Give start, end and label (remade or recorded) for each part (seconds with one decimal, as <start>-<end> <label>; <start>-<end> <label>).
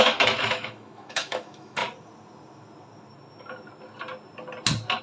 0.0-1.8 remade; 1.8-5.0 recorded